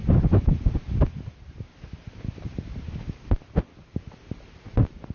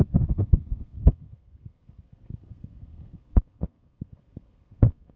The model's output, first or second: second